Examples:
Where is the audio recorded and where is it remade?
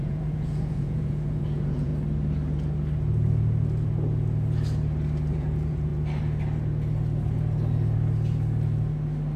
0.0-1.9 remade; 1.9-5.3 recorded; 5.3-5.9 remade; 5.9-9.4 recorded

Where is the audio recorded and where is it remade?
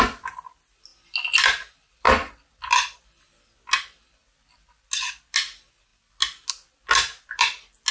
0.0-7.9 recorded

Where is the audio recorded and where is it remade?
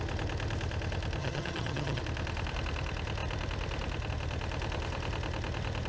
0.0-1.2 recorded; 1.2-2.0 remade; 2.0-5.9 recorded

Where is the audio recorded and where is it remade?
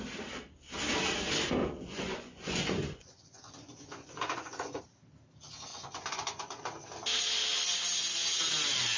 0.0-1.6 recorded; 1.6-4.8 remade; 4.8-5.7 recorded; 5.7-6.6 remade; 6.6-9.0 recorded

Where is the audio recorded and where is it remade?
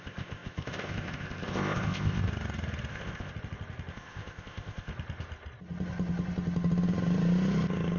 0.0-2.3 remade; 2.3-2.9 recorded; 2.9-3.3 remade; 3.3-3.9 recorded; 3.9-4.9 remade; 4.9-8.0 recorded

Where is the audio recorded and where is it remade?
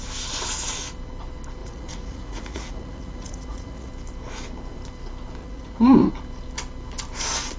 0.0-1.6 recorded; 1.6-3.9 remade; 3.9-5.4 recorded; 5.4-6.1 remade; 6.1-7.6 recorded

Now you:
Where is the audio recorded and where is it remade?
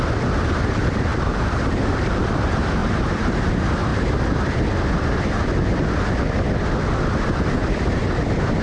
0.0-1.1 recorded; 1.1-2.3 remade; 2.3-2.8 recorded; 2.8-3.5 remade; 3.5-8.6 recorded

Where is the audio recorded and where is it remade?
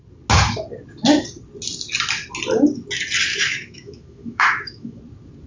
0.0-3.3 recorded; 3.3-5.0 remade; 5.0-5.5 recorded